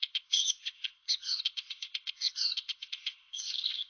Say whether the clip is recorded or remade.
remade